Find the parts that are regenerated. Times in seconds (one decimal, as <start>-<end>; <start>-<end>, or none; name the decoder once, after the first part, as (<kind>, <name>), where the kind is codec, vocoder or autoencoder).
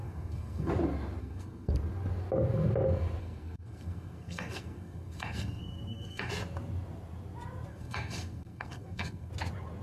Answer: 0.0-0.7 (codec, SNAC); 1.2-1.7; 3.2-6.3; 7.7-9.3